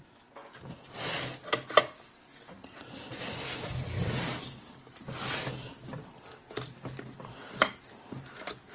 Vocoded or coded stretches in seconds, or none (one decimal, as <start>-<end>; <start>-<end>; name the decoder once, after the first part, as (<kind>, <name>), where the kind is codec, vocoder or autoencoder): 0.0-0.4 (vocoder, BigVGAN v2); 5.0-8.7

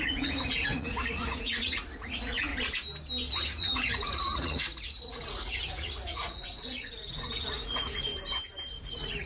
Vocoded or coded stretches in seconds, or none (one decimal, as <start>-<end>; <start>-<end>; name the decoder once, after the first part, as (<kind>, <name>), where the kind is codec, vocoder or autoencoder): 0.0-2.5 (vocoder, Vocos); 3.3-8.1; 8.7-9.3

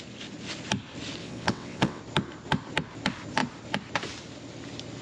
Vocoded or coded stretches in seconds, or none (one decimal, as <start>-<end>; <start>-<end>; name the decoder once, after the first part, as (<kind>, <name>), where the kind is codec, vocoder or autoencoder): 1.2-2.0 (vocoder, WaveNeXt)

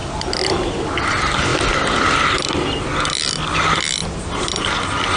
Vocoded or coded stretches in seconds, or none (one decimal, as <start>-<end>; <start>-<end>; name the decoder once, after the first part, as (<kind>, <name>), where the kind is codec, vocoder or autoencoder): none

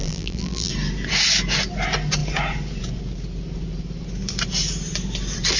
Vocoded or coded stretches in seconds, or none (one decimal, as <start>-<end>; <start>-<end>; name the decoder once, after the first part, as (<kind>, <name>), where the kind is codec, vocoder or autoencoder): 0.0-0.7 (vocoder, BigVGAN v2)